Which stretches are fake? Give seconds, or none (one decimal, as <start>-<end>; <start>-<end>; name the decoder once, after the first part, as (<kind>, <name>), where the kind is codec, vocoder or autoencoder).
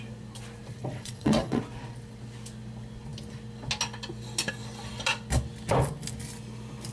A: 0.8-1.6 (vocoder, WaveNeXt)